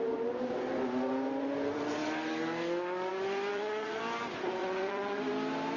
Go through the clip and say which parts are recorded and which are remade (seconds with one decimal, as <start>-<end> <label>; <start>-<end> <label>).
0.0-3.5 recorded; 3.5-4.0 remade; 4.0-4.6 recorded; 4.6-5.2 remade; 5.2-5.8 recorded